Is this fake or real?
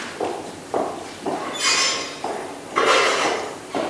fake